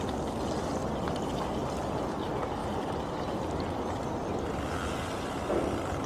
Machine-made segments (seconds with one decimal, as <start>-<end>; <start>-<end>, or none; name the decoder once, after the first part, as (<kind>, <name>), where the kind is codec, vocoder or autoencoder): none